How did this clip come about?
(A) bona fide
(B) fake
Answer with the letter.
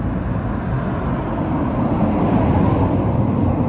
A